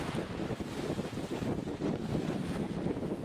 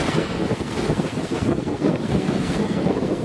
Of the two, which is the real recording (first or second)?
first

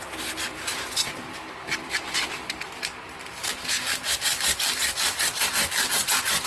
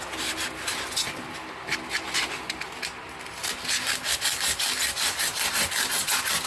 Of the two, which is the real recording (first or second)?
second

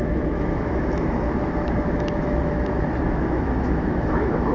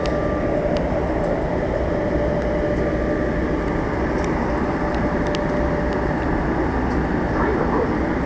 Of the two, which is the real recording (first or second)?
second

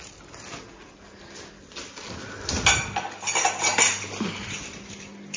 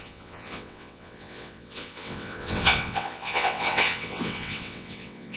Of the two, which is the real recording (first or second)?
first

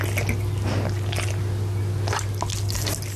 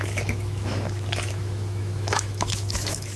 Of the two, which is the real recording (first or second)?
first